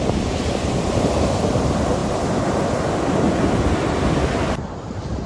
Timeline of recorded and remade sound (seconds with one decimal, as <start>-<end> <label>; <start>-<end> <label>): 0.0-5.3 remade